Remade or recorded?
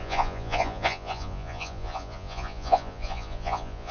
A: remade